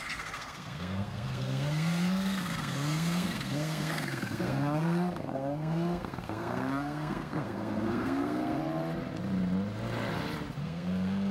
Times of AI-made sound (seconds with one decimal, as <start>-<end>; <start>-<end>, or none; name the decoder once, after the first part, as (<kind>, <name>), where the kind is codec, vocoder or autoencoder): 0.0-8.6 (codec, SNAC); 10.6-11.3